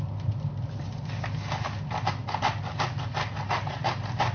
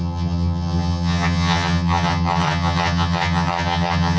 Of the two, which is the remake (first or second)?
second